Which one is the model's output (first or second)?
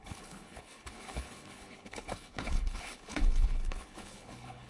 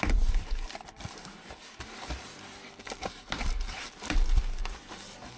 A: first